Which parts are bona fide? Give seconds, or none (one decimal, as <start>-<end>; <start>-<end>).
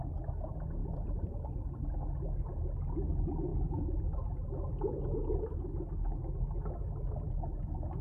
0.0-0.8; 2.4-8.0